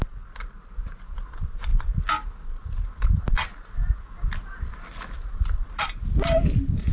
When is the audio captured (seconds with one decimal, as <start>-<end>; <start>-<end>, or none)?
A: 0.0-6.9

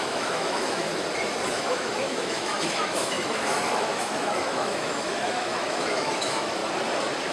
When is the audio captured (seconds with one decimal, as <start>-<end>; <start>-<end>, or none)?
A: 0.9-1.5; 6.6-7.3

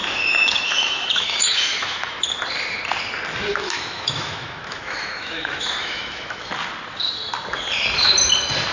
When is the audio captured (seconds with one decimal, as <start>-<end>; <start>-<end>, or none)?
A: 2.2-3.5; 6.5-8.7

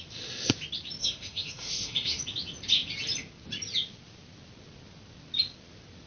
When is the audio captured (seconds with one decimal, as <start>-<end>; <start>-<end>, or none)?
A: 0.0-1.0; 2.2-6.1